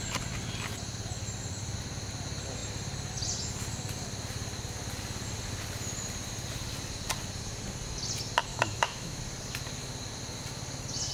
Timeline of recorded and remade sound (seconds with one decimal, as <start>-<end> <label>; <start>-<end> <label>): 0.0-8.5 recorded; 8.5-9.2 remade; 9.2-11.1 recorded

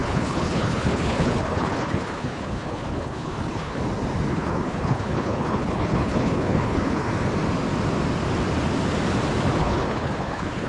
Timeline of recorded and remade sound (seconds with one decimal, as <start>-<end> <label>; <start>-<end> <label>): 0.0-3.8 remade; 3.8-4.3 recorded; 4.3-7.1 remade; 7.1-9.6 recorded; 9.6-10.7 remade

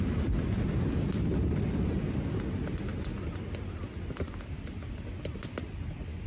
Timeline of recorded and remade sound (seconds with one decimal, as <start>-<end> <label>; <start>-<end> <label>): 0.0-6.3 recorded

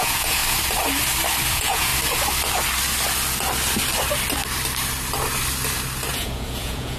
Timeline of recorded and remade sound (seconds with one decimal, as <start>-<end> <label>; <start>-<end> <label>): 0.0-0.4 remade; 0.4-1.5 recorded; 1.5-1.9 remade; 1.9-6.1 recorded; 6.1-7.0 remade

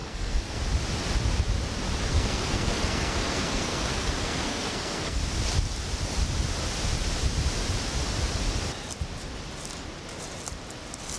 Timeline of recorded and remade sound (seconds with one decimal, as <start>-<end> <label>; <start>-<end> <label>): 0.0-0.6 remade; 0.6-2.1 recorded; 2.1-5.2 remade; 5.2-11.2 recorded